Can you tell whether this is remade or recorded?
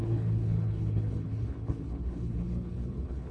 remade